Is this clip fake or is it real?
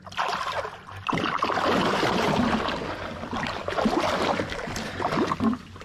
real